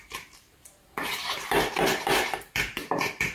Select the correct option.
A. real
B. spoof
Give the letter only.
B